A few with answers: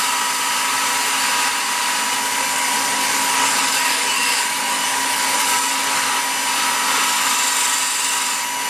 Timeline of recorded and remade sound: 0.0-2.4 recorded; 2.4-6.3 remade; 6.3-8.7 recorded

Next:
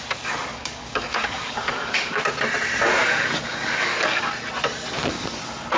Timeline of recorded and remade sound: 0.0-0.5 recorded; 0.5-2.2 remade; 2.2-3.0 recorded; 3.0-4.3 remade; 4.3-5.8 recorded

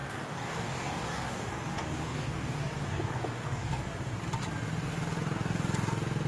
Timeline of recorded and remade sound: 0.0-3.8 remade; 3.8-6.3 recorded

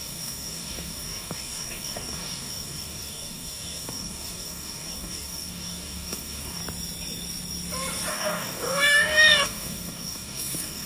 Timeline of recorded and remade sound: 0.0-6.6 remade; 6.6-8.1 recorded; 8.1-10.9 remade

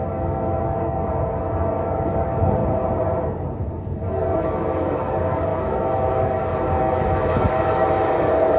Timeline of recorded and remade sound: 0.0-2.6 remade; 2.6-3.7 recorded; 3.7-8.6 remade

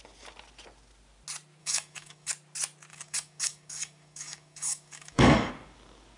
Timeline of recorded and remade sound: 0.0-1.6 recorded; 1.6-2.3 remade; 2.3-2.9 recorded; 2.9-5.5 remade; 5.5-6.2 recorded

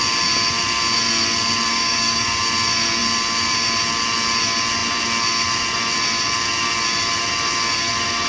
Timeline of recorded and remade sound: 0.0-1.7 recorded; 1.7-2.4 remade; 2.4-8.3 recorded